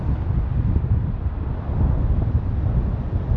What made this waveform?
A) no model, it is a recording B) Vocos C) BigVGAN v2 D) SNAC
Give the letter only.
A